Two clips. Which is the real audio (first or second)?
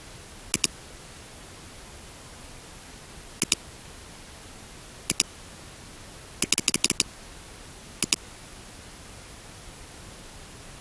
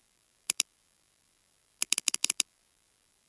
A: first